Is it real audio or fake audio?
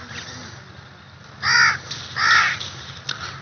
real